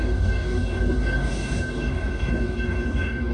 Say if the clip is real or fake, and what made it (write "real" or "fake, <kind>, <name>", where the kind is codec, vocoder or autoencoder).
fake, codec, DAC